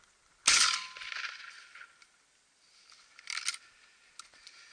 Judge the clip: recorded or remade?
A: recorded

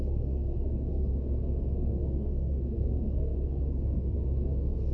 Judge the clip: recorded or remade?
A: remade